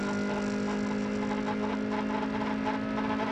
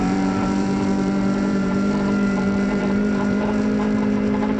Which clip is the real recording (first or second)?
first